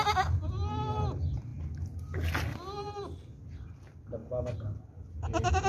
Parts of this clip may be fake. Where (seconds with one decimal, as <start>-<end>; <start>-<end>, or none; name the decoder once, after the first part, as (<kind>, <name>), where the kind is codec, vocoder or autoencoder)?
none